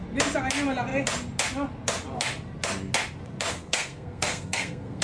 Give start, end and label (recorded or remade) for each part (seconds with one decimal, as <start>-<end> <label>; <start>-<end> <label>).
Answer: 0.0-3.5 recorded; 3.5-5.0 remade